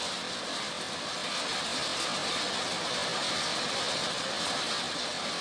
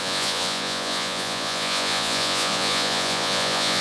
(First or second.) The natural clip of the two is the first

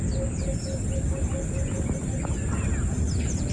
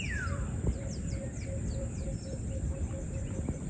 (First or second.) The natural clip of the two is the first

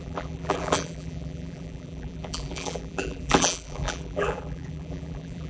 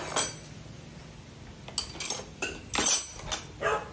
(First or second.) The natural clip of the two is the second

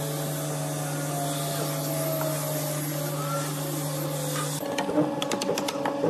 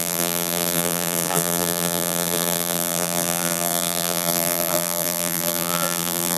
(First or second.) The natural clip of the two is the first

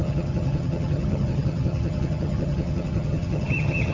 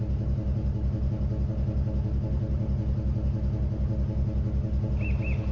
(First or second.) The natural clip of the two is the second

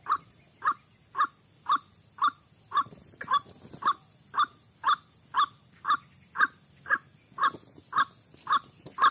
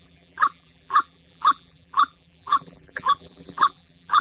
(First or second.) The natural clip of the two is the first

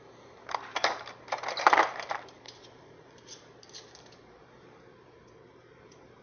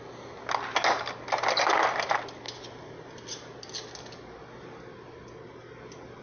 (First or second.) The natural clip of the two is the second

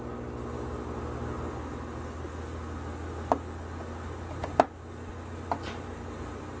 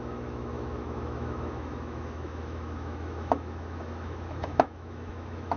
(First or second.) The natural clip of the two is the first